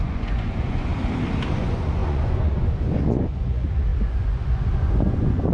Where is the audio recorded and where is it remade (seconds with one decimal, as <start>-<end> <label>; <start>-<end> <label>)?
0.0-0.9 remade; 0.9-1.5 recorded; 1.5-5.5 remade